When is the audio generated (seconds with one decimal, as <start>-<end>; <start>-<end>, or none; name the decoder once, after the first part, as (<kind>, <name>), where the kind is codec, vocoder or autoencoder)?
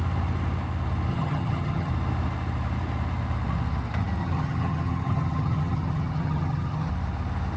1.1-1.9 (vocoder, HiFi-GAN); 4.2-6.9